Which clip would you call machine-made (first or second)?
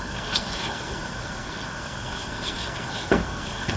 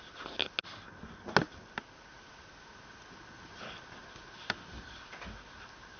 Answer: first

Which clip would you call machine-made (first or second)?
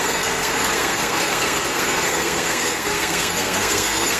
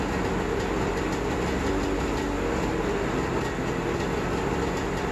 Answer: first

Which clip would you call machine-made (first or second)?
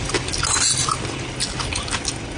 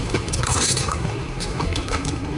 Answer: second